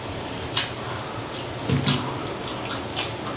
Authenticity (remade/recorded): recorded